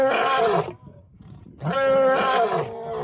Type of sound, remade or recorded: recorded